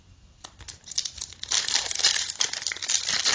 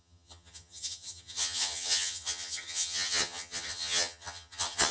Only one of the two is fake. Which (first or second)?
second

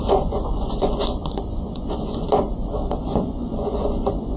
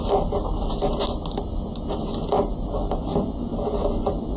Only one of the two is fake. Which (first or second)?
first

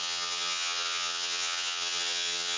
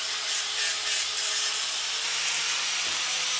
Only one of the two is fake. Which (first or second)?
first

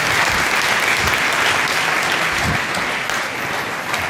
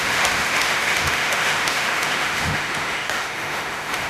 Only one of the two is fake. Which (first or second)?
second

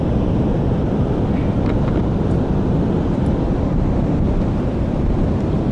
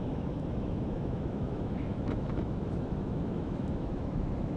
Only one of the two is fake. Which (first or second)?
second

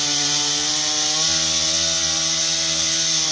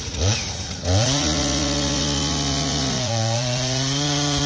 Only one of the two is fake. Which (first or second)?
second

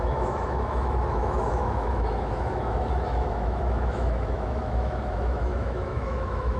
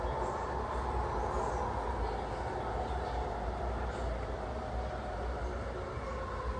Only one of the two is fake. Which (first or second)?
first